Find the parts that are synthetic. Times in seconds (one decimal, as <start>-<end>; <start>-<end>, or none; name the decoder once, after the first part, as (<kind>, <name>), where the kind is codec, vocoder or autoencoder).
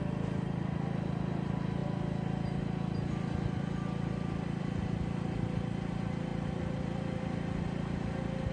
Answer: 6.3-7.2 (vocoder, BigVGAN v2)